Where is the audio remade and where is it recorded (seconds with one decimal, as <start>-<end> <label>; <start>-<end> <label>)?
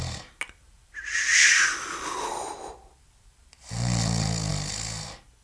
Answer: 0.0-5.4 recorded